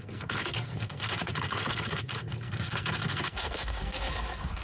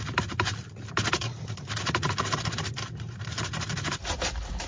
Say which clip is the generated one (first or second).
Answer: first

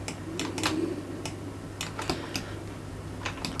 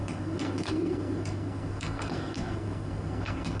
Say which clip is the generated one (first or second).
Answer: second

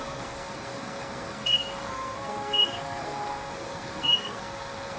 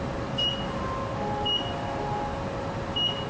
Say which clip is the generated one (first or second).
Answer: first